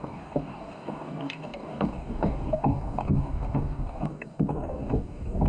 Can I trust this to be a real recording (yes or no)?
no